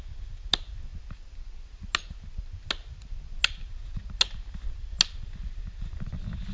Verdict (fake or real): real